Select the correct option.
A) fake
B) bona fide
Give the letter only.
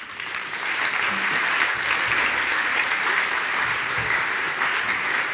A